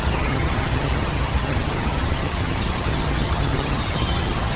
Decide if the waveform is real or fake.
fake